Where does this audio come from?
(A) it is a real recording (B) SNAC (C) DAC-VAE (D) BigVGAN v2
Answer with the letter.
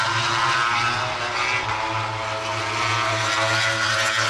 A